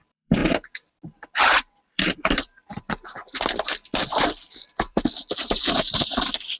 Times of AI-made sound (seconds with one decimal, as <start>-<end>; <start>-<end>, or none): 0.0-0.4; 1.4-6.6